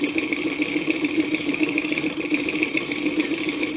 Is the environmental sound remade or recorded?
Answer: remade